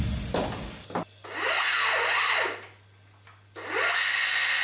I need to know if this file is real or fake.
real